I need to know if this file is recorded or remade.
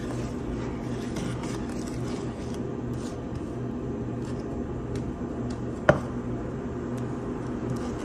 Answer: recorded